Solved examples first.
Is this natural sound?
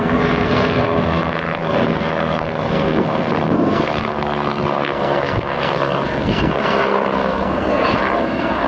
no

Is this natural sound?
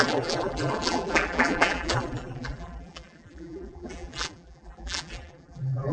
no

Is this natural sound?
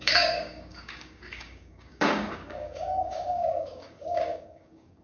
no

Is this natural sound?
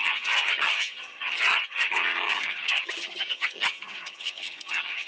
no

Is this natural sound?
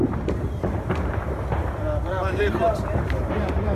no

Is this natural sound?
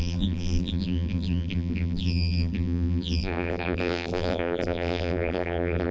no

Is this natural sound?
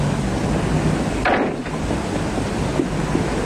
yes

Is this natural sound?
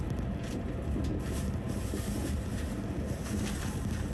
yes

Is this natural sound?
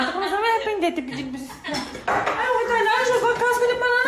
yes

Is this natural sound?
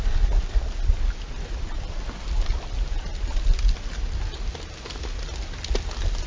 yes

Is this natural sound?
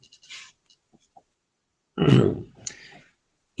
no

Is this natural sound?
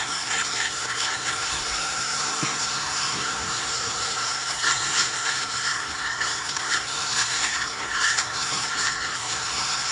no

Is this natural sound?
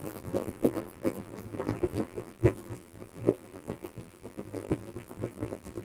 no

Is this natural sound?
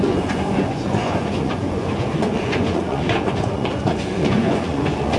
no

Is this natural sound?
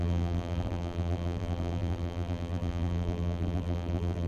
no